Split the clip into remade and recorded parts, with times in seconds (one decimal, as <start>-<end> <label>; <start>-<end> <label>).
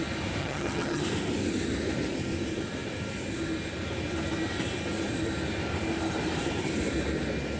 0.0-0.4 recorded; 0.4-1.0 remade; 1.0-7.6 recorded